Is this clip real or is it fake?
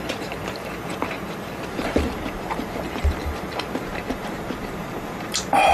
fake